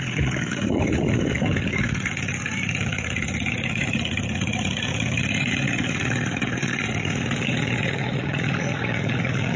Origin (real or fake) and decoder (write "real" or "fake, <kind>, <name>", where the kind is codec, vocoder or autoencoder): fake, vocoder, Vocos